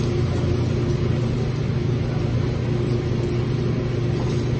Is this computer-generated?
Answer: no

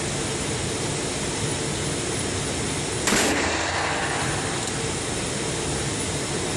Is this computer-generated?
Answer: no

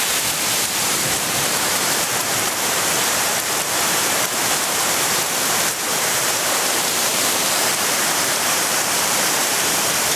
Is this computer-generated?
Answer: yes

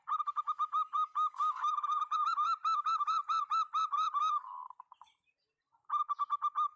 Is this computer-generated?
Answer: yes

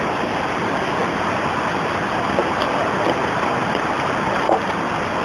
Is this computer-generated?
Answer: no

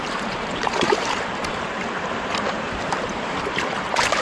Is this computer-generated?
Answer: yes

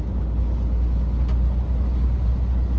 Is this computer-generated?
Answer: no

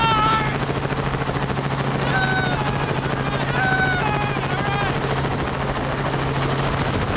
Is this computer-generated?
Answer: no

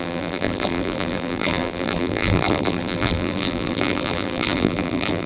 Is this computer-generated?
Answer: yes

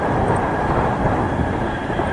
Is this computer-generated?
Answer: yes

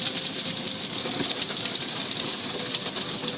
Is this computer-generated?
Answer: no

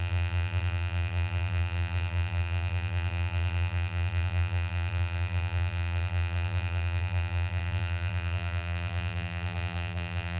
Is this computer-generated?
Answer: yes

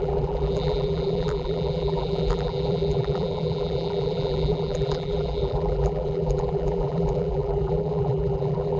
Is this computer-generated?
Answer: yes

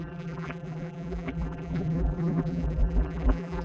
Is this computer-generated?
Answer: yes